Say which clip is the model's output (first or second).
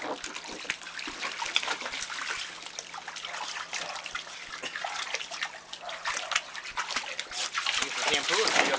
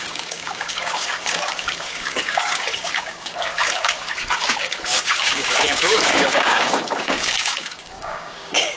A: second